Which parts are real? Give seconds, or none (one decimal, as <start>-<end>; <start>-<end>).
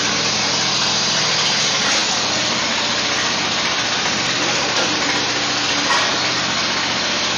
0.0-2.0; 2.6-7.4